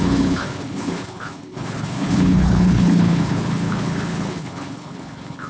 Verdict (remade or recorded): remade